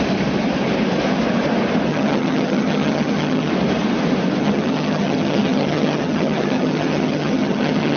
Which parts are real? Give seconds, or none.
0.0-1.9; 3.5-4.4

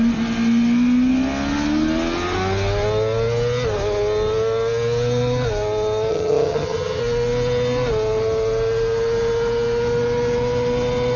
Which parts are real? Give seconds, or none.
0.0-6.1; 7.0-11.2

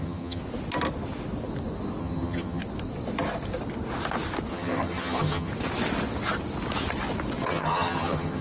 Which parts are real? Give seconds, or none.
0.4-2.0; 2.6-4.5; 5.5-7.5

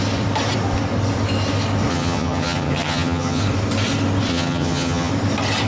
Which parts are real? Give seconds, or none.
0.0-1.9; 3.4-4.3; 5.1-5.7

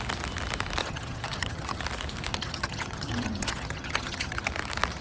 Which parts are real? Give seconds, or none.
0.0-0.8; 1.8-2.3; 4.5-5.0

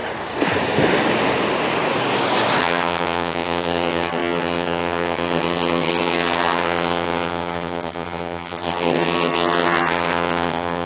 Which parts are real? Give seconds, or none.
0.0-2.6

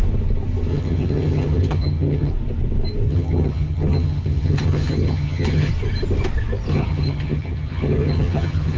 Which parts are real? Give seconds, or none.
0.0-0.7; 2.3-3.1; 5.7-6.7

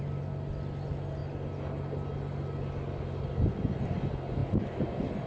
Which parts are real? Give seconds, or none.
0.0-5.3